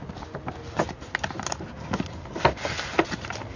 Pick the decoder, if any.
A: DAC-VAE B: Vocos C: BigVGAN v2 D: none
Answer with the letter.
D